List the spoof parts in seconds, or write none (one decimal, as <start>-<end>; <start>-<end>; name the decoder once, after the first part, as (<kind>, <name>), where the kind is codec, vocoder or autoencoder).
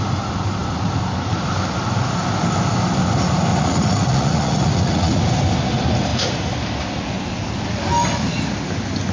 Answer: 3.5-5.2 (vocoder, Vocos)